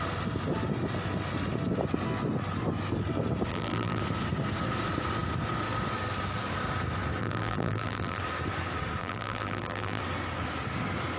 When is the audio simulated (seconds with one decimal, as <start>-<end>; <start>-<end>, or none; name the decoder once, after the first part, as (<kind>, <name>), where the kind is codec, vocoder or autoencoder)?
3.5-4.0 (vocoder, BigVGAN v2); 7.2-8.2; 9.0-10.0